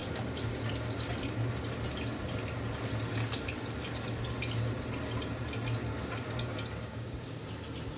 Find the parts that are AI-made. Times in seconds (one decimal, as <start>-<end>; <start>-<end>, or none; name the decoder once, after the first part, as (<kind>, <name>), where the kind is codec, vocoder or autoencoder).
6.8-7.4 (codec, DAC)